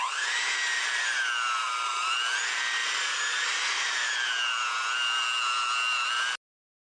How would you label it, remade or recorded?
recorded